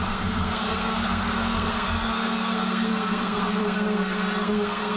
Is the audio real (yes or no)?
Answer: no